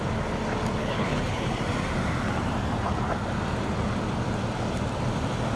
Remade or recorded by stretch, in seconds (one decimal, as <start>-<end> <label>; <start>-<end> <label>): 0.0-0.8 recorded; 0.8-1.6 remade; 1.6-5.6 recorded